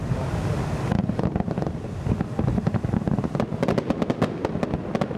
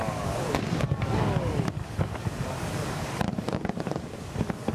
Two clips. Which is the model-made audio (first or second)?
second